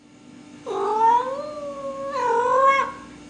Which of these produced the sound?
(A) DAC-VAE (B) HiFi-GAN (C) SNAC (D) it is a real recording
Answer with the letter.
D